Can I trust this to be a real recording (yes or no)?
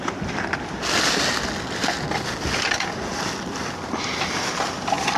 yes